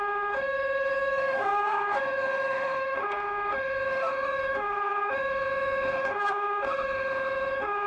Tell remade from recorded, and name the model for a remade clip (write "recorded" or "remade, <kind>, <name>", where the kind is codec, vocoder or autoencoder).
remade, autoencoder, DAC-VAE